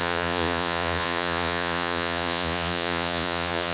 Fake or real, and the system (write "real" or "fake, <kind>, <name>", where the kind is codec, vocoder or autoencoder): fake, vocoder, Vocos